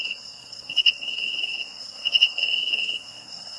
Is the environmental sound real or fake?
fake